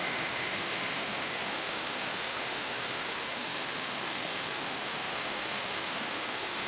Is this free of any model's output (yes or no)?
no